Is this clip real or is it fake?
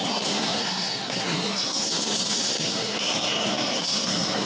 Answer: fake